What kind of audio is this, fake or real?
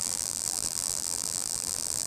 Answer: fake